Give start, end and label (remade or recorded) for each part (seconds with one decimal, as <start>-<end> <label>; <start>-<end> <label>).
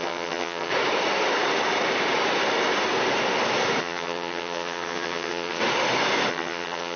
0.0-0.7 remade; 0.7-3.8 recorded; 3.8-5.6 remade; 5.6-6.3 recorded; 6.3-7.0 remade